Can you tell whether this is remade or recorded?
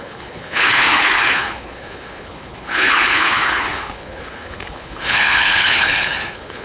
remade